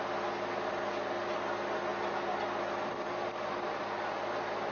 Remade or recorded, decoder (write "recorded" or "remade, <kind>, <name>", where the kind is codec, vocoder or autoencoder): recorded